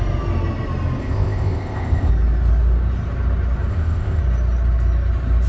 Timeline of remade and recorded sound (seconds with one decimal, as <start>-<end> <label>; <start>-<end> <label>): 0.0-1.0 recorded; 1.0-2.1 remade; 2.1-3.7 recorded; 3.7-4.2 remade; 4.2-5.5 recorded